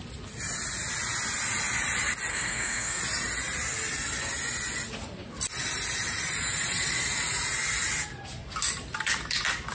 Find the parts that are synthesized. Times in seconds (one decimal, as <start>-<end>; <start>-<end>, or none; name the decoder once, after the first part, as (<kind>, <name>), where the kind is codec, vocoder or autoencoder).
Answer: 2.3-3.0 (codec, SNAC)